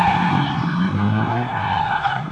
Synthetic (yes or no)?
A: yes